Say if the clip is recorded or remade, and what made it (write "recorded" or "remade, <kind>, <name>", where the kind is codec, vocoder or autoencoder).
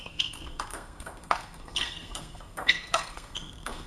remade, codec, SNAC